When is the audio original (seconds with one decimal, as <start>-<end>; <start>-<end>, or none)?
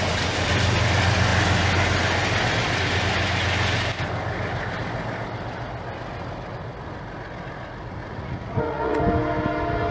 0.0-8.0; 9.0-9.9